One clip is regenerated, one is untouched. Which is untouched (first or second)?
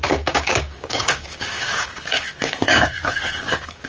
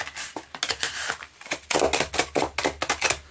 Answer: second